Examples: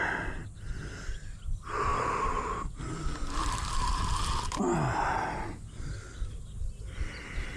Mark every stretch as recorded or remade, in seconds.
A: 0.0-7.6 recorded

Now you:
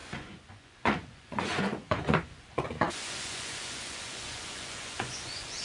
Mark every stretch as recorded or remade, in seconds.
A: 0.0-5.6 remade